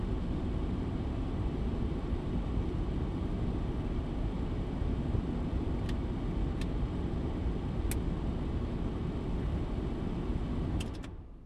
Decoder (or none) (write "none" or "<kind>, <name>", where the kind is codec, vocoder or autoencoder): none